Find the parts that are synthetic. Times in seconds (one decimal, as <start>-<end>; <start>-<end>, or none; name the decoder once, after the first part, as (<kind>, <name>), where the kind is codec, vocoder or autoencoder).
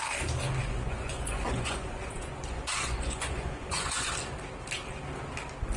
0.6-4.1 (vocoder, Vocos)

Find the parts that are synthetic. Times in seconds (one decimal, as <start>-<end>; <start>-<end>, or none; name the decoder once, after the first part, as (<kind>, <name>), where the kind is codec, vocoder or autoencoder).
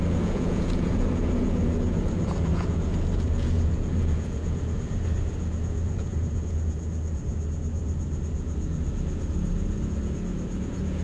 0.0-11.0 (vocoder, Vocos)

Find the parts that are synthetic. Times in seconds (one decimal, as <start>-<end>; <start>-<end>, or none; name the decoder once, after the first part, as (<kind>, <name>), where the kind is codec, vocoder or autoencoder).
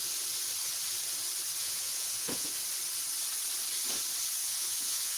1.6-2.5 (vocoder, Vocos); 4.4-5.2